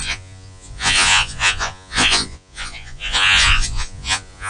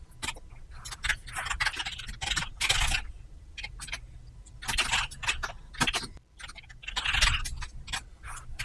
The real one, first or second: second